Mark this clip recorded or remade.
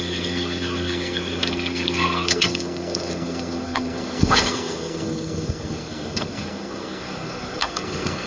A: remade